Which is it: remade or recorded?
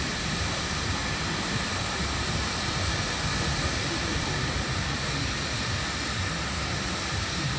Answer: remade